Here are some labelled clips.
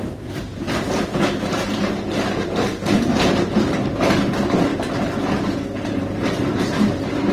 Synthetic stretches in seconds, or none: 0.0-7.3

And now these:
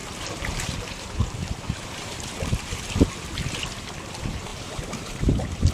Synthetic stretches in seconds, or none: 0.0-2.8; 4.5-5.3

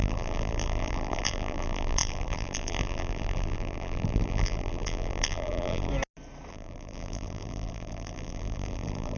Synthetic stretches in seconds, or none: 0.0-5.9; 6.5-9.2

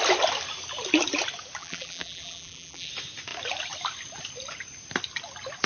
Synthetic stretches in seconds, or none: 1.6-2.9

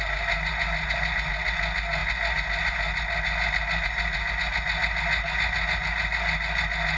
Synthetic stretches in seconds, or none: none

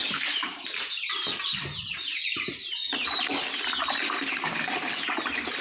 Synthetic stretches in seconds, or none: 0.0-3.4

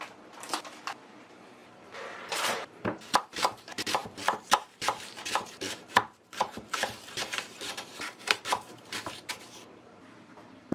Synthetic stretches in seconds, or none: 0.0-10.7

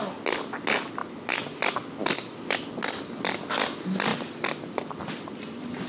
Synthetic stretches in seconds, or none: 4.1-5.9